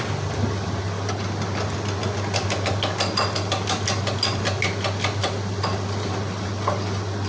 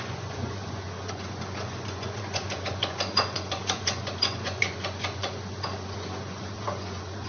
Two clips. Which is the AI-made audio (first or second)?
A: second